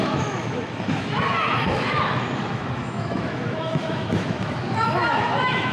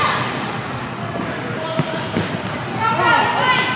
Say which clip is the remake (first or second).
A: first